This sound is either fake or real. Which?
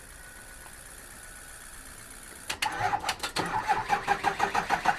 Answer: real